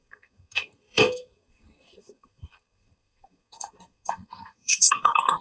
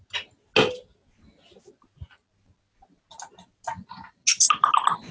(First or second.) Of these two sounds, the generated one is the first